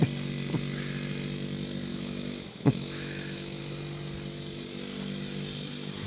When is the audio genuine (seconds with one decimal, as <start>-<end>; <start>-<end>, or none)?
0.0-1.9; 3.6-6.1